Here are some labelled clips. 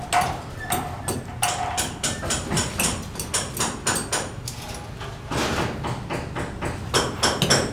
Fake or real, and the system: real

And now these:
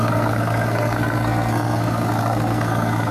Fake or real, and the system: fake, codec, SNAC